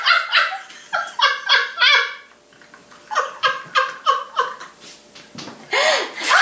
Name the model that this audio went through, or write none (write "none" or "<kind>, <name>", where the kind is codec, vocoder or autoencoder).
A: none